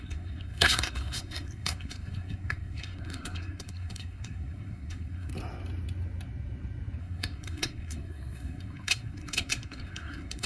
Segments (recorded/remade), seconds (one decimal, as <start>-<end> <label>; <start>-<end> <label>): 0.0-5.3 remade; 5.3-7.0 recorded; 7.0-10.5 remade